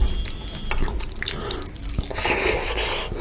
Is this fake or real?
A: real